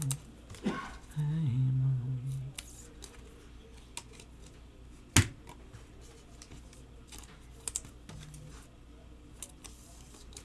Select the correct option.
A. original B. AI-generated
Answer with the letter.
A